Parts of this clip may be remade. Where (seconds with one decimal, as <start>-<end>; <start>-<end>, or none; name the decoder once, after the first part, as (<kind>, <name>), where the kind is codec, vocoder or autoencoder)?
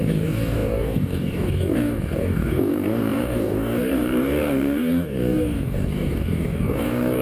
0.0-7.2 (codec, DAC)